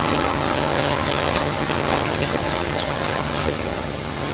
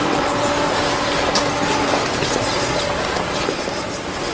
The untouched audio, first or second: second